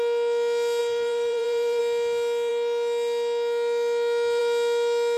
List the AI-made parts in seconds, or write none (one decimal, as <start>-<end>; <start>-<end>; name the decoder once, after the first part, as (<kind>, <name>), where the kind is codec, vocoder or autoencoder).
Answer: 0.8-1.8 (vocoder, BigVGAN v2)